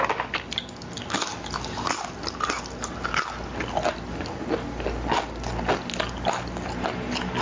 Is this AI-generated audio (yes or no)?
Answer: no